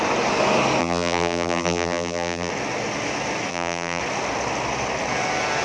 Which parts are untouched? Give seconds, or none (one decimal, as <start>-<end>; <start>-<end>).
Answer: 0.0-0.8; 2.5-3.5; 4.0-5.6